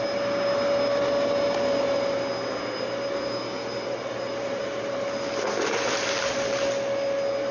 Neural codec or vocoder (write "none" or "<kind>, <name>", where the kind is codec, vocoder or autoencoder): none